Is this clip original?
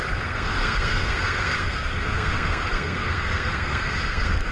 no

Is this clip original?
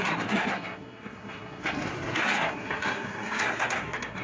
no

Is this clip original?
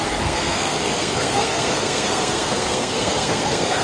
no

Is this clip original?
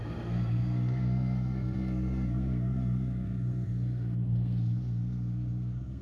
no